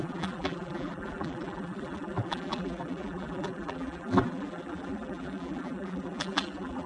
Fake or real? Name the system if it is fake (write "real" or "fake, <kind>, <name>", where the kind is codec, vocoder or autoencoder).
fake, vocoder, BigVGAN v2